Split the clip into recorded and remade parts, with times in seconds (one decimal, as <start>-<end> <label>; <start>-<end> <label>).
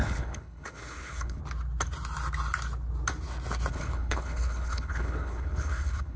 0.0-1.4 remade; 1.4-3.7 recorded; 3.7-6.2 remade